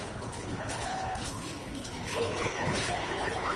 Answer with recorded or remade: remade